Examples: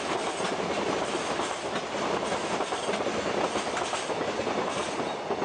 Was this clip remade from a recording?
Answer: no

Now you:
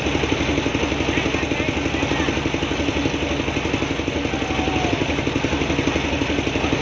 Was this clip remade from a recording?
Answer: no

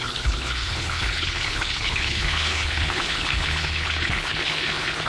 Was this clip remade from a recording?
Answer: yes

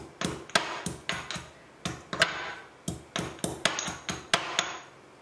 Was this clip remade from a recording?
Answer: no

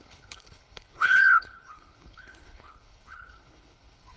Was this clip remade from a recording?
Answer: yes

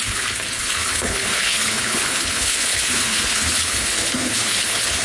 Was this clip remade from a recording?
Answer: yes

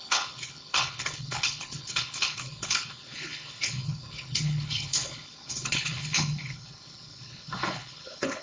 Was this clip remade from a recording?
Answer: yes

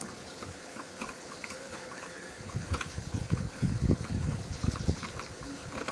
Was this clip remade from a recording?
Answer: yes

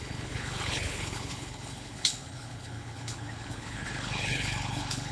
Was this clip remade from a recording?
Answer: yes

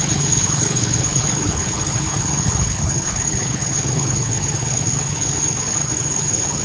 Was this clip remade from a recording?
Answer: yes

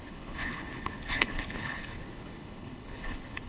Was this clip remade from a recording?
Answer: yes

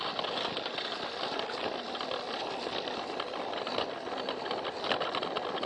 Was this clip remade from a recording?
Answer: no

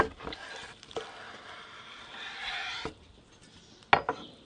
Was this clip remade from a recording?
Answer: no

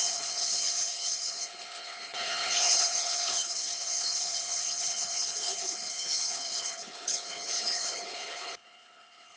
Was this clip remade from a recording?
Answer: yes